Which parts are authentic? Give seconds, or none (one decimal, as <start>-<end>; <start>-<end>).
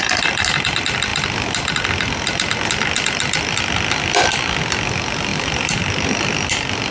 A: 0.0-5.3; 6.2-6.9